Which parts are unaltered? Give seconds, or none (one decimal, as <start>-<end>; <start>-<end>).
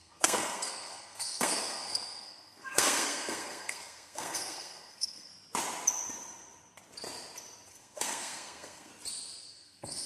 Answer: 5.3-7.7; 8.9-9.4